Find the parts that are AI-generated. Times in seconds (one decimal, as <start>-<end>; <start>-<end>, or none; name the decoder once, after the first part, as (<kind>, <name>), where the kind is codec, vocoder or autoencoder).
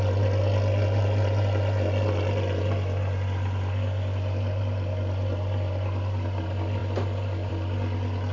none